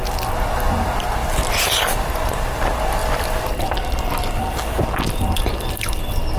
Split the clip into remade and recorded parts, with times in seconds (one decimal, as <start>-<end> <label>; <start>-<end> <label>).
0.0-1.2 recorded; 1.2-2.0 remade; 2.0-3.0 recorded; 3.0-3.9 remade; 3.9-6.4 recorded